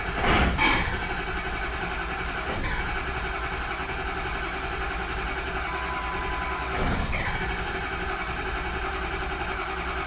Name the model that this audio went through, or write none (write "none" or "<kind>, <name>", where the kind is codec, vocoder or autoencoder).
none